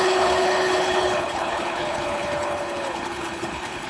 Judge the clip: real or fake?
fake